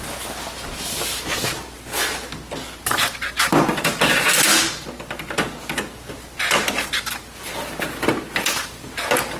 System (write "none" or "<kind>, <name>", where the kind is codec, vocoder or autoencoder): none